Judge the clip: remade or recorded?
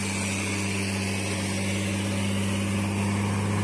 recorded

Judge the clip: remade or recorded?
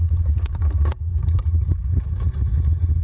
remade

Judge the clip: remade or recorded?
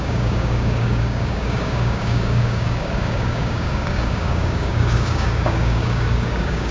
remade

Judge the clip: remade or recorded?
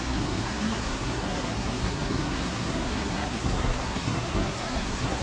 remade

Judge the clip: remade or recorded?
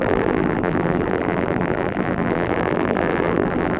remade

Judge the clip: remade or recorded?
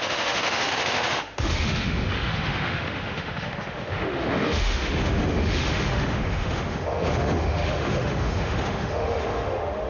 remade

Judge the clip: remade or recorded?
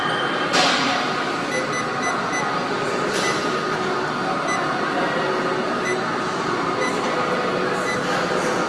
recorded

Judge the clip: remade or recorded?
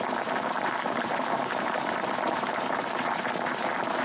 remade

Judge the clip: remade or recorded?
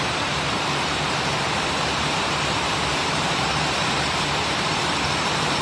remade